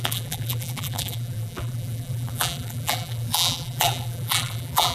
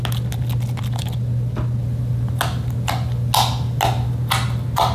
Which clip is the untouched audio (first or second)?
second